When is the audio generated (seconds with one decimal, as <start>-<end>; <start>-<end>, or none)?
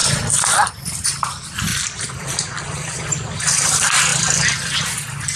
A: 1.7-3.0